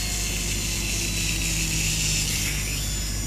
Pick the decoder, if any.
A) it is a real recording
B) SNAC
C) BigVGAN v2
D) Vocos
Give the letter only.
A